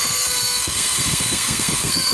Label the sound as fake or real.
fake